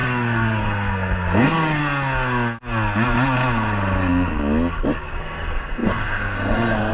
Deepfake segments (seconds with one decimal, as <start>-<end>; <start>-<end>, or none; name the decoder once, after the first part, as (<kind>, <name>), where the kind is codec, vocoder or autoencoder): 0.0-1.8 (codec, SNAC); 5.1-6.9